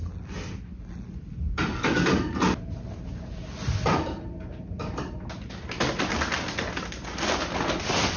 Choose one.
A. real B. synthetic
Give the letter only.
A